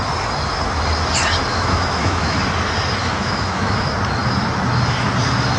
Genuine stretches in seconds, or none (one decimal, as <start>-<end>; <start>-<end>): 0.0-1.5; 2.4-3.0; 3.8-5.6